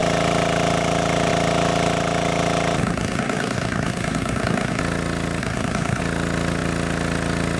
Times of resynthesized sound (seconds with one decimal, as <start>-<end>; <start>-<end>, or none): 2.8-4.8; 5.4-6.0